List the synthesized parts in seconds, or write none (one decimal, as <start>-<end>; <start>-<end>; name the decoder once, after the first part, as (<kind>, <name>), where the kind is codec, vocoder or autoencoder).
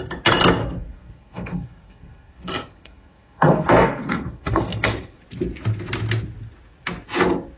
0.6-5.2 (codec, SNAC)